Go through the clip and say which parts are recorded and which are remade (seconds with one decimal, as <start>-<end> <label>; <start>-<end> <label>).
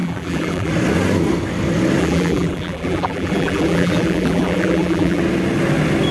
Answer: 0.0-0.7 remade; 0.7-2.0 recorded; 2.0-5.2 remade; 5.2-6.1 recorded